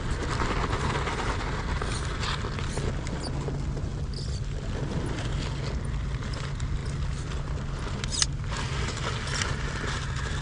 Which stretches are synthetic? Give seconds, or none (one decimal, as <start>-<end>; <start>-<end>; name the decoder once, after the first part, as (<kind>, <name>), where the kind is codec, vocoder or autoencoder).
none